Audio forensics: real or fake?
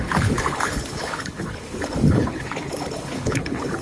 fake